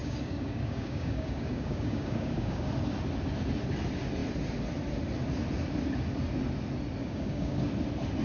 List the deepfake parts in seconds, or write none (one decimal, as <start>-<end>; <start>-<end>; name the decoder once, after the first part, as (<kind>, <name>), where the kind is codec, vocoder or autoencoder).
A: 0.0-2.7 (codec, DAC); 7.0-7.7